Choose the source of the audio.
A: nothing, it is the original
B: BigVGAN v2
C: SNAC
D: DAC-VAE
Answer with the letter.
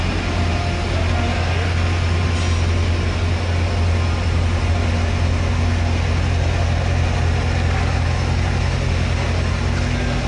A